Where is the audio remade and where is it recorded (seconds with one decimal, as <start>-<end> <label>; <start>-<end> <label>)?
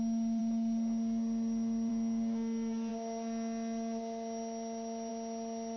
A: 0.0-5.8 recorded